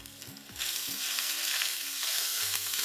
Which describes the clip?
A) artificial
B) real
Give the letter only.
A